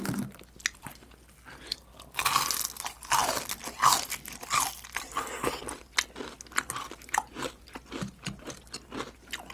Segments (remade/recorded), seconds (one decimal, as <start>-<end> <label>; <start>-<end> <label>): 0.0-9.5 recorded